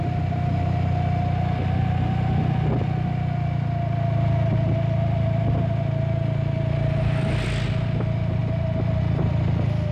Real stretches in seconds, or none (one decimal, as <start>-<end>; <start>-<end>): 0.0-9.9